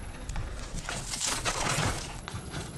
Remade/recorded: remade